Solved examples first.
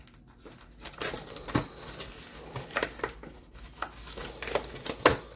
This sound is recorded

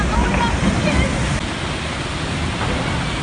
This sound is recorded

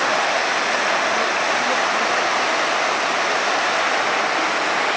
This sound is recorded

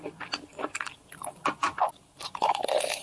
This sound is recorded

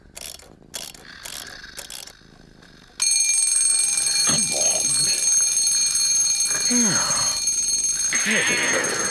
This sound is recorded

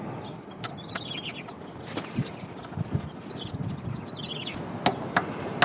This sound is recorded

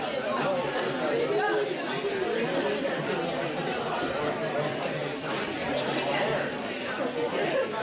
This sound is recorded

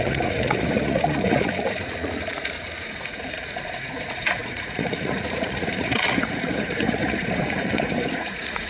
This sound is remade